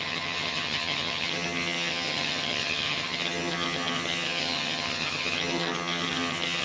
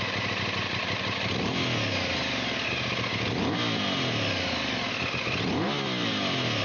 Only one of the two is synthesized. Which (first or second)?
first